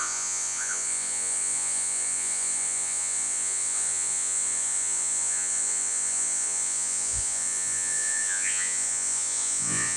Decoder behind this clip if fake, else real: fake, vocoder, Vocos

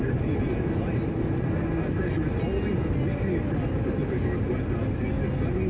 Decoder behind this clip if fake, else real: real